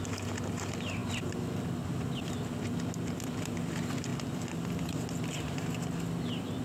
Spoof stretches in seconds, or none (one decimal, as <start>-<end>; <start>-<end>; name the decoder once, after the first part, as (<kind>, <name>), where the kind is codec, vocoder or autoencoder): none